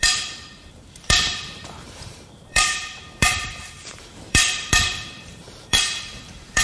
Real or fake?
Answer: fake